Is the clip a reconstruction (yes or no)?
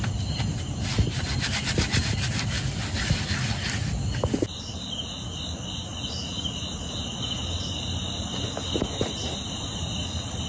no